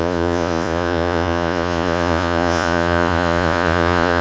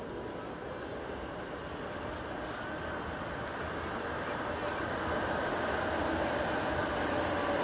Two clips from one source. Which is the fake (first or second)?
first